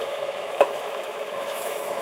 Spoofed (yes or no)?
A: yes